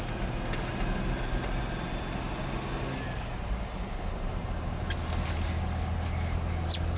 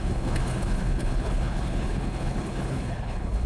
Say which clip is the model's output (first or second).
second